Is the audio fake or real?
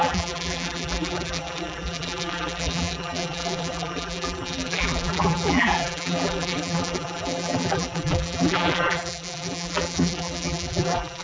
fake